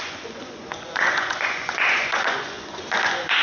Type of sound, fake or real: fake